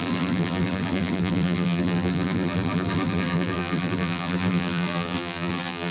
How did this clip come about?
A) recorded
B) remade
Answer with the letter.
B